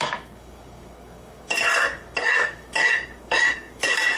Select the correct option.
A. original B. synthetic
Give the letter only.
B